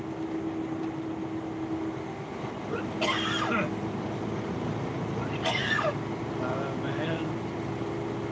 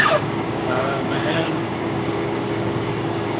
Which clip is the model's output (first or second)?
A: second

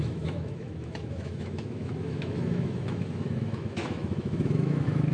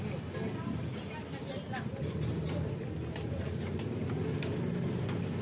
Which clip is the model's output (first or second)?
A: first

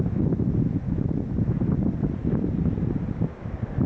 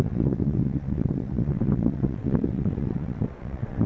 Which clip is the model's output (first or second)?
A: second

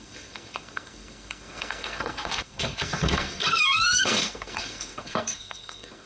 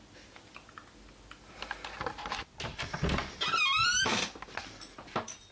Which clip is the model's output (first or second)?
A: first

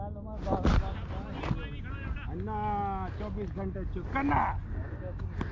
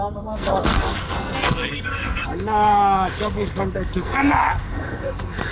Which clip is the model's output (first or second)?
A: second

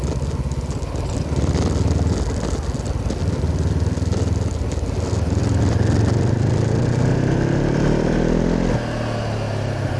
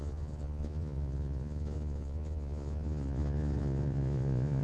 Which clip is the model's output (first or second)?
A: second